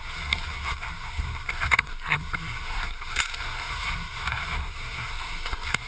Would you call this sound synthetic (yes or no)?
yes